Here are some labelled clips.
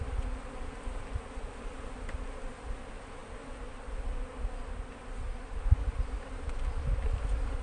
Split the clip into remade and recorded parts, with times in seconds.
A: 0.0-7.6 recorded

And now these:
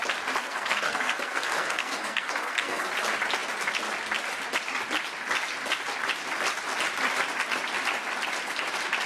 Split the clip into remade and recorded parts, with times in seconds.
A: 0.0-0.4 recorded; 0.4-2.9 remade; 2.9-9.1 recorded